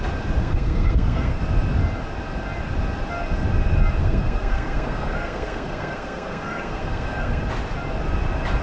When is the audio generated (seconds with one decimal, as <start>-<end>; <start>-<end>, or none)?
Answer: 0.4-1.4; 4.0-7.4